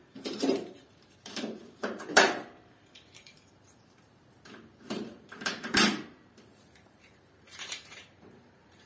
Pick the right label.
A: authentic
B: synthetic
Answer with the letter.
B